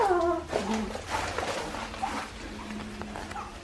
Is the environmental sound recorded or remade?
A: recorded